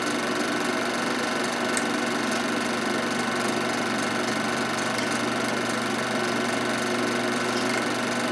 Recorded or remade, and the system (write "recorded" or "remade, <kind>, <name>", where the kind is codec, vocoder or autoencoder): recorded